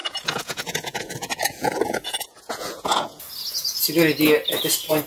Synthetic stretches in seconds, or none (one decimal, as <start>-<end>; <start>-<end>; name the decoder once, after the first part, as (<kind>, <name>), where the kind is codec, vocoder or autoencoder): 0.0-3.8 (vocoder, Vocos)